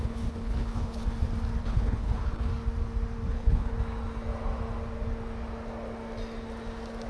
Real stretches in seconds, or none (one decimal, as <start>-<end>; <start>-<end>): 1.0-1.6; 2.5-3.3; 3.7-7.1